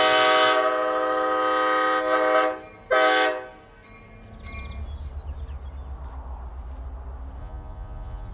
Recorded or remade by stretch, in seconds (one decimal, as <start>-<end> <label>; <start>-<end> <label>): 0.0-7.4 recorded; 7.4-8.3 remade